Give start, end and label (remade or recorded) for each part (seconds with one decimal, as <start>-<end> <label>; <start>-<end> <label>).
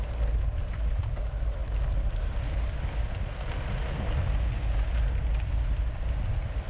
0.0-6.7 recorded